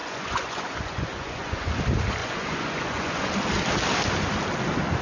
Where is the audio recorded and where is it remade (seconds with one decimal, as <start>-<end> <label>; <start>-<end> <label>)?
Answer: 0.0-1.7 remade; 1.7-2.2 recorded; 2.2-3.3 remade; 3.3-5.0 recorded

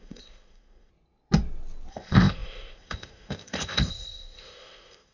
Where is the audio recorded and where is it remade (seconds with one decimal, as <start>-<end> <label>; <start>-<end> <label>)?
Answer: 0.0-0.9 remade; 0.9-1.9 recorded; 1.9-5.1 remade

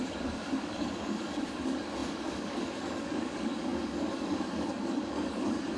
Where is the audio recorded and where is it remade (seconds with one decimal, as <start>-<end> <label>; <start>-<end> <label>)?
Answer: 0.0-5.8 remade

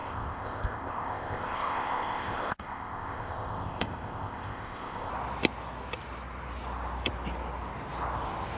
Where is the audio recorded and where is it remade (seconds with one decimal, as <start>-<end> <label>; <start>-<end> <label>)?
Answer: 0.0-5.1 remade; 5.1-8.6 recorded